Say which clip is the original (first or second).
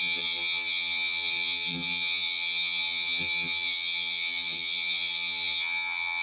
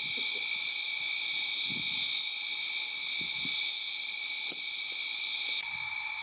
second